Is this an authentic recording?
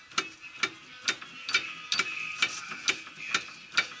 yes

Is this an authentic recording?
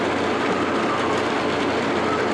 yes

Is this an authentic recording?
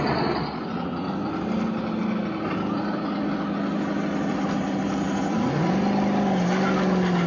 yes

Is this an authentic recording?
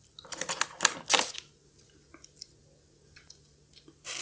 yes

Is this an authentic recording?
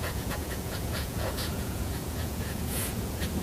no